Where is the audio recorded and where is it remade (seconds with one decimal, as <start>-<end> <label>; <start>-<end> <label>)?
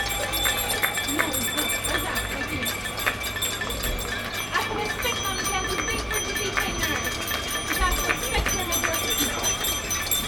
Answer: 0.0-10.3 recorded